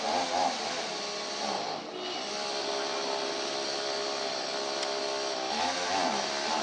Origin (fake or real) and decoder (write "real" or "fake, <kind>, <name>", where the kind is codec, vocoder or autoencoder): real